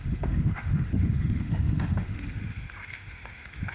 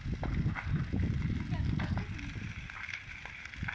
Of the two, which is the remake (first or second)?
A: first